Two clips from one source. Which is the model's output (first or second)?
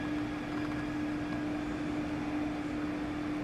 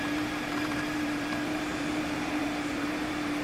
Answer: second